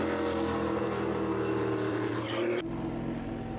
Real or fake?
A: real